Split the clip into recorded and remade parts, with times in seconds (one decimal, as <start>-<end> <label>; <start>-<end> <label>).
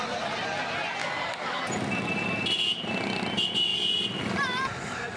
0.0-1.0 recorded; 1.0-1.6 remade; 1.6-5.2 recorded